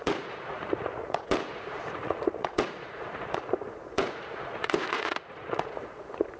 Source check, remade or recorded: remade